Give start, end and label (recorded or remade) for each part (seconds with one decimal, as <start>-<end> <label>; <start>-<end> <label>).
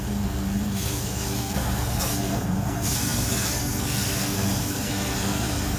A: 0.0-5.8 remade